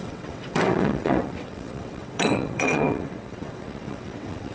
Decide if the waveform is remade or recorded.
remade